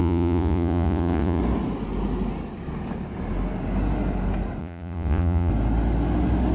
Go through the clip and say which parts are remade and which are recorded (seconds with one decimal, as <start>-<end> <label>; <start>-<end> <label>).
0.0-1.4 remade; 1.4-4.6 recorded; 4.6-5.5 remade; 5.5-6.5 recorded